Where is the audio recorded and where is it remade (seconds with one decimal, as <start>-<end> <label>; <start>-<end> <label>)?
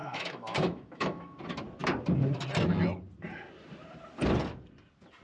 0.0-1.4 remade; 1.4-5.2 recorded